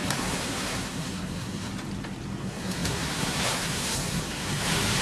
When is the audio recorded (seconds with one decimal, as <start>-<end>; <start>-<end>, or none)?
1.7-2.4